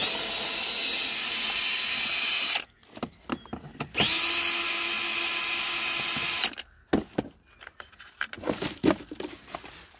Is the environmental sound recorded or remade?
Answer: recorded